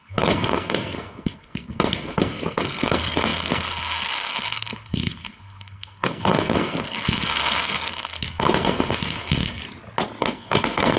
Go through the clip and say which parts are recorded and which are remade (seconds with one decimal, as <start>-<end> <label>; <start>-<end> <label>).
0.0-9.6 remade; 9.6-10.2 recorded; 10.2-11.0 remade